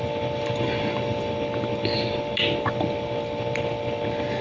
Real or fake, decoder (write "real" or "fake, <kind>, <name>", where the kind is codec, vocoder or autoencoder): real